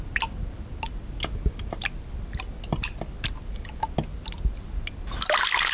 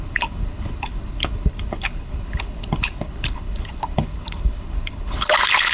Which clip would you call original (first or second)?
first